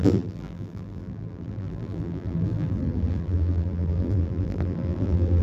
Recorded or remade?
remade